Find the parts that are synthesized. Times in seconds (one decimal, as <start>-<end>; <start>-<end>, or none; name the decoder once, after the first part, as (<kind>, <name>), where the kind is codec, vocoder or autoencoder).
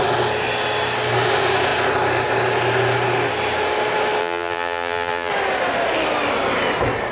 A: 4.2-5.3 (vocoder, BigVGAN v2)